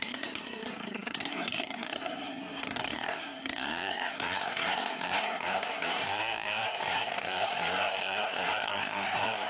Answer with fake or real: fake